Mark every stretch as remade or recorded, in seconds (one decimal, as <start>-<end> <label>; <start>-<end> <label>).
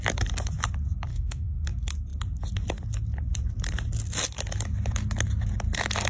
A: 0.0-1.1 recorded; 1.1-1.6 remade; 1.6-6.1 recorded